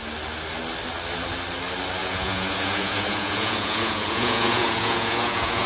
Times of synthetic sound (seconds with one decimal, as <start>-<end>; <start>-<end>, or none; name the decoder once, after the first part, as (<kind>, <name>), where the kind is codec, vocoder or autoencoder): 2.0-5.7 (vocoder, Vocos)